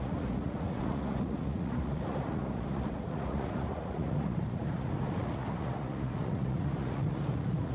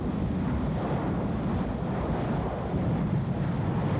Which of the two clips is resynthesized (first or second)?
first